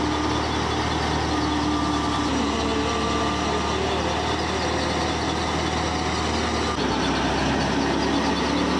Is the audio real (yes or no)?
yes